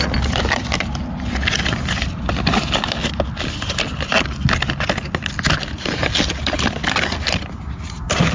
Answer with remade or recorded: recorded